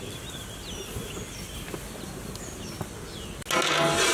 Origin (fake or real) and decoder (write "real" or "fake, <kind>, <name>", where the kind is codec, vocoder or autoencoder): real